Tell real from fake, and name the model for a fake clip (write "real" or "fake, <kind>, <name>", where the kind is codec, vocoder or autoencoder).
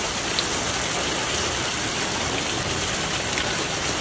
fake, vocoder, BigVGAN v2